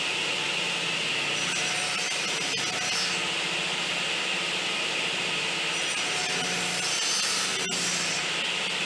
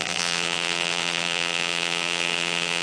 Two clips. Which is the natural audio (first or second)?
first